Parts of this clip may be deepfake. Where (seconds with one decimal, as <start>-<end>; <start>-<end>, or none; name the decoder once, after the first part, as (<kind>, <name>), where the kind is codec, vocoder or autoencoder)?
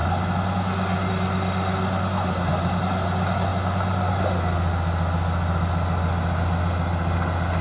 none